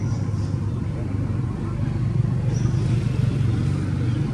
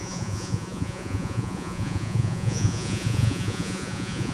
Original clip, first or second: first